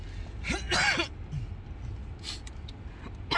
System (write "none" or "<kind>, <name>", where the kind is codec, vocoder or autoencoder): none